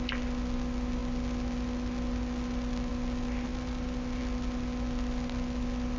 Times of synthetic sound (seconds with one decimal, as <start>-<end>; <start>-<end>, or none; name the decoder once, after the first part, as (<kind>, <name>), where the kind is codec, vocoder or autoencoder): none